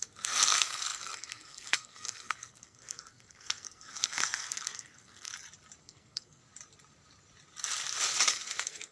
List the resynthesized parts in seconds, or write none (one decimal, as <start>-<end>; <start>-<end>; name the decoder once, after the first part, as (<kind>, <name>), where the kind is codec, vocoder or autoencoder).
0.0-5.3 (codec, SNAC); 5.8-6.4; 8.3-8.9